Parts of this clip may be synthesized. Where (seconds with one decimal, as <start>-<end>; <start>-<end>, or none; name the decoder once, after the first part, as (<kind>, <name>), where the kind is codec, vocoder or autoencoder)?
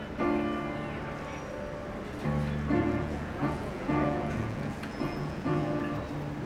2.8-5.8 (vocoder, Vocos)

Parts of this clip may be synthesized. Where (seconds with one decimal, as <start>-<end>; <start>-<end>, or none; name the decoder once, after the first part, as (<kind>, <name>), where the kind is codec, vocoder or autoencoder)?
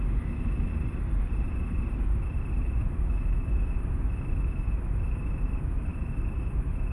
0.0-0.7 (autoencoder, DAC-VAE); 2.6-6.9